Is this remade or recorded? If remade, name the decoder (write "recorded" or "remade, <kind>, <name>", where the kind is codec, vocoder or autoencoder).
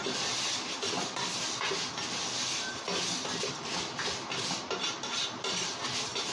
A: recorded